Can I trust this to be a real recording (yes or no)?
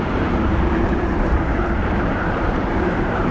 no